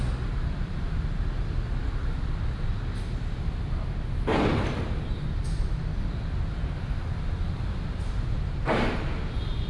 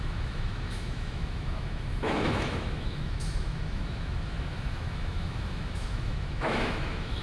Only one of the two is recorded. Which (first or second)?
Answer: first